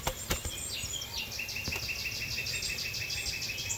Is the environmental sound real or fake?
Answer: real